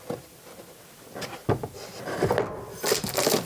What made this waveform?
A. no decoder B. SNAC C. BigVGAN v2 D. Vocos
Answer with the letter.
A